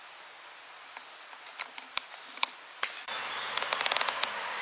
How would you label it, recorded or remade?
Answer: recorded